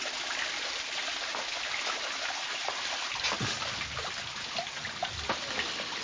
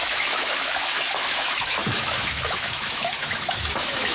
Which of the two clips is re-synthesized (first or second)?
second